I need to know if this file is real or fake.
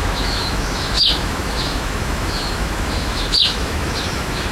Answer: fake